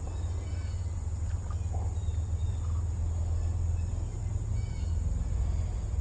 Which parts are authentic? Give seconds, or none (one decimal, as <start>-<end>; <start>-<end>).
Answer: 0.0-6.0